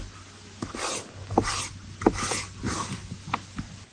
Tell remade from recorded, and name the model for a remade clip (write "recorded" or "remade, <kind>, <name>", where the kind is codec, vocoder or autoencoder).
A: recorded